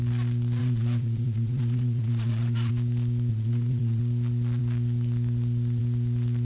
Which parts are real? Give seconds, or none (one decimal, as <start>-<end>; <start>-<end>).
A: 0.0-0.6; 2.7-3.3; 4.0-6.4